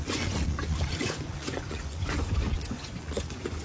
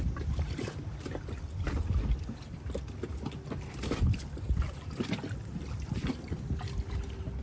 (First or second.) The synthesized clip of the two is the first